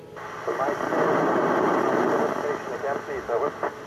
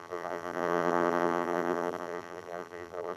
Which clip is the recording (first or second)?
first